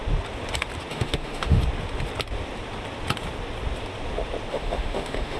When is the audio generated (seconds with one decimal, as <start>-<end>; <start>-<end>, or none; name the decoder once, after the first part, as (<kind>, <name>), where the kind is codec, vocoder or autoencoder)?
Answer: 0.9-1.6 (autoencoder, DAC-VAE); 4.5-5.4